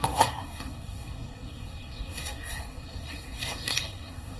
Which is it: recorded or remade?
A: remade